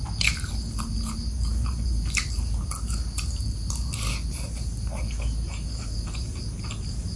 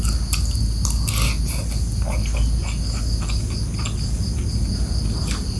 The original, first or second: second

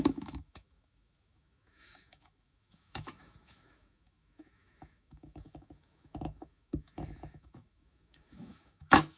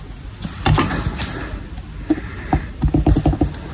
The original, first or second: second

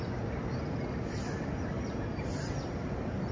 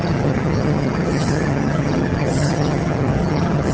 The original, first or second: first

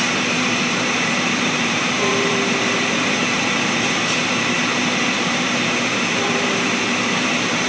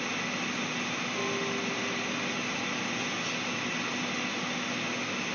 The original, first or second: second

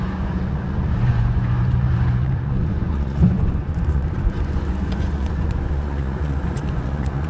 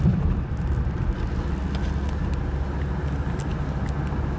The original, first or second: second